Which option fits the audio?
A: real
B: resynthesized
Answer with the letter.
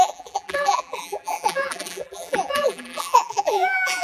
B